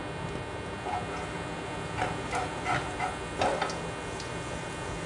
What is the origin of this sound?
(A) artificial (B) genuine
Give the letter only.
B